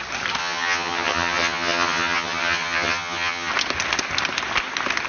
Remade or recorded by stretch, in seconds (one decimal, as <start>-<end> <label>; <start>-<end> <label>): 0.0-0.4 recorded; 0.4-3.5 remade; 3.5-5.1 recorded

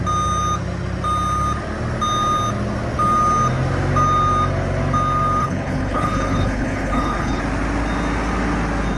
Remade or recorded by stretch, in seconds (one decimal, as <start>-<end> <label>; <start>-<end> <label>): 0.0-5.4 recorded; 5.4-7.4 remade; 7.4-9.0 recorded